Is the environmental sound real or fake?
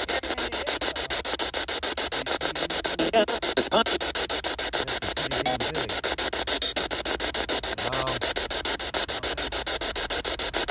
real